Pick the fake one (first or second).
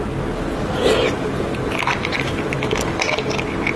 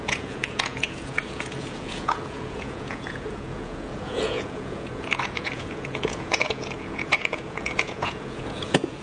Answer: second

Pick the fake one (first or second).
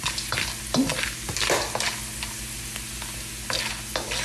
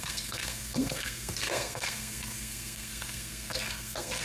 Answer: second